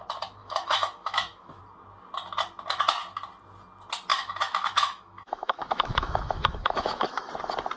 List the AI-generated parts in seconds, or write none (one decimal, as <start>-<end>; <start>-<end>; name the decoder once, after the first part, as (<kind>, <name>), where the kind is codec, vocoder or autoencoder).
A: 0.4-1.6 (autoencoder, DAC-VAE); 4.1-7.3